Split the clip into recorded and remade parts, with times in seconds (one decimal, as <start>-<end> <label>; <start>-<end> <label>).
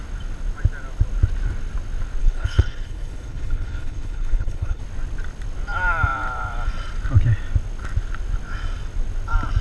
0.0-2.2 recorded; 2.2-4.8 remade; 4.8-9.6 recorded